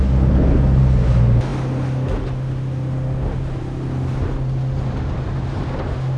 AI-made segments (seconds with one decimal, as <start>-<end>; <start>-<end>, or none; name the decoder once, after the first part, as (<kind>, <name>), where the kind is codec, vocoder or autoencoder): none